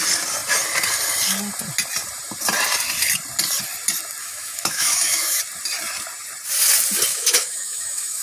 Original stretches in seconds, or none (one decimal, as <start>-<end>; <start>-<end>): 0.0-4.2; 5.4-7.1